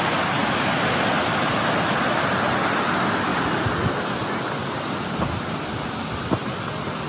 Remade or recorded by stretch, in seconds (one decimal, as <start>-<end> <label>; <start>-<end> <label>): 0.0-0.4 recorded; 0.4-1.4 remade; 1.4-7.1 recorded